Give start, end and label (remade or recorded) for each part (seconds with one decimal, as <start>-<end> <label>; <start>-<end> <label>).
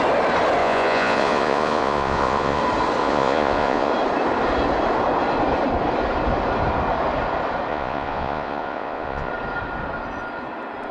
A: 0.0-0.6 recorded; 0.6-2.6 remade; 2.6-3.0 recorded; 3.0-3.9 remade; 3.9-7.7 recorded; 7.7-9.3 remade; 9.3-10.9 recorded